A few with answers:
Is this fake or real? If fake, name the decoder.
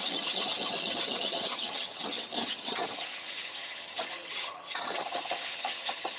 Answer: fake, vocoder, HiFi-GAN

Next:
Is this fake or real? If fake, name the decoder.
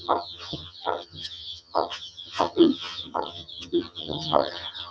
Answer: fake, vocoder, HiFi-GAN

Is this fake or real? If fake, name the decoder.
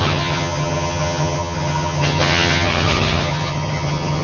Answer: fake, vocoder, HiFi-GAN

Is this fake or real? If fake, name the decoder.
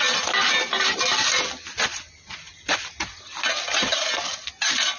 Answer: real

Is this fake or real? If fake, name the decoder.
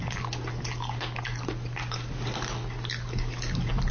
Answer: real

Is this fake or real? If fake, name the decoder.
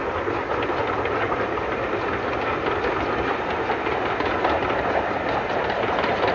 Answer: real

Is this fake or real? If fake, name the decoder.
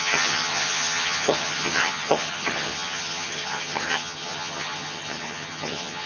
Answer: fake, vocoder, HiFi-GAN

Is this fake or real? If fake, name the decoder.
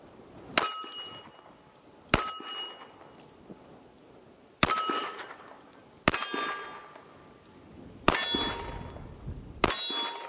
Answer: real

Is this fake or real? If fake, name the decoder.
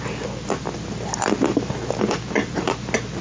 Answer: real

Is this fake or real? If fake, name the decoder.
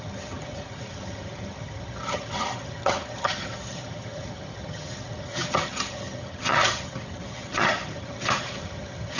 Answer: fake, vocoder, HiFi-GAN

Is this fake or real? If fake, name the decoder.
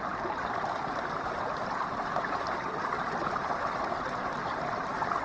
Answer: real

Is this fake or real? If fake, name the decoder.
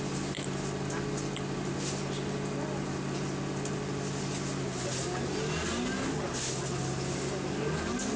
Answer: real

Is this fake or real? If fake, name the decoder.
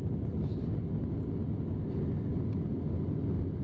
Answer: real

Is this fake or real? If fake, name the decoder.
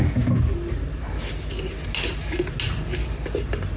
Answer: real